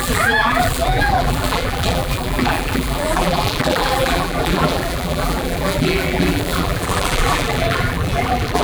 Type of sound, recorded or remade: remade